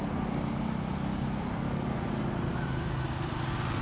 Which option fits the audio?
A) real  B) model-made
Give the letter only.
A